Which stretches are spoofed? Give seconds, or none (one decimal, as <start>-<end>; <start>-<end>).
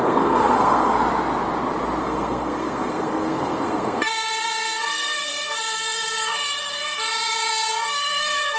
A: 0.0-0.9; 2.0-8.6